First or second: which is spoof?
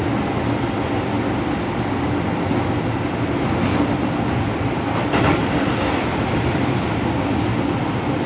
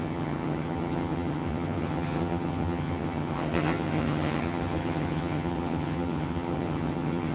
second